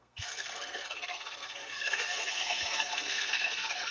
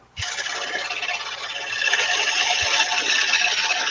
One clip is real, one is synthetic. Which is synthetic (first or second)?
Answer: first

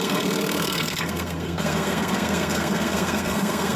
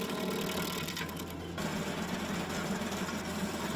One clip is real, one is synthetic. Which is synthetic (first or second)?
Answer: first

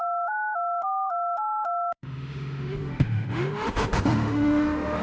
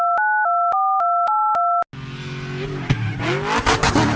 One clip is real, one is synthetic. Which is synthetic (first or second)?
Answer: first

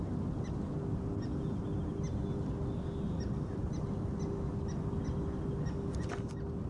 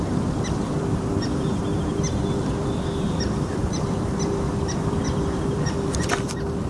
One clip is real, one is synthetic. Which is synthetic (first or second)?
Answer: second